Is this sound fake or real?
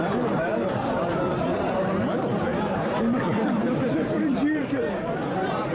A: fake